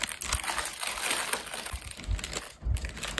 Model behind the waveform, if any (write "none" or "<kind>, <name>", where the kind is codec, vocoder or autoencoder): none